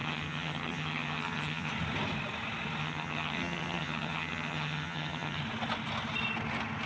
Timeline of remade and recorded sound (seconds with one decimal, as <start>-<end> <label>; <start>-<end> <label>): 0.0-1.7 remade; 1.7-2.8 recorded; 2.8-5.4 remade; 5.4-6.9 recorded